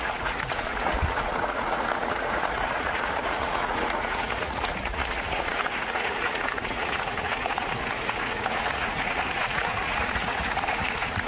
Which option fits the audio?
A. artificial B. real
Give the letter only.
A